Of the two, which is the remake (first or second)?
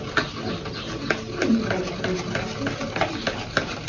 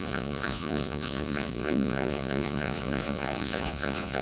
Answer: second